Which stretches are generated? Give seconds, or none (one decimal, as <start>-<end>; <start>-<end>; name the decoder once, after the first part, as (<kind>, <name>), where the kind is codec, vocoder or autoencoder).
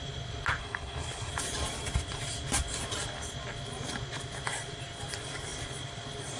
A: 0.6-1.3 (codec, HILCodec)